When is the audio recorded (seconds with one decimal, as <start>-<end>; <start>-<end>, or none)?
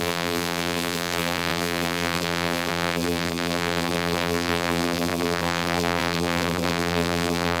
none